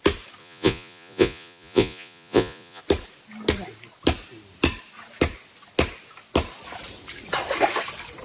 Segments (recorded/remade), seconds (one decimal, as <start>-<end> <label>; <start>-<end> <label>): 0.0-0.4 recorded; 0.4-2.8 remade; 2.8-8.2 recorded